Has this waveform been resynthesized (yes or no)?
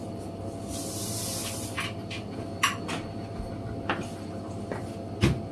no